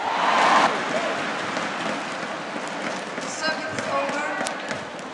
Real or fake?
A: real